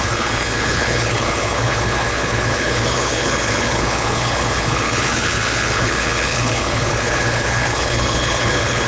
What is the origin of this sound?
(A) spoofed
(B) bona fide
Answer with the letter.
A